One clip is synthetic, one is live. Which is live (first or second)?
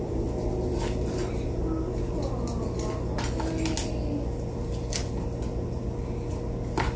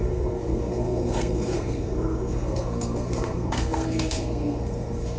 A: first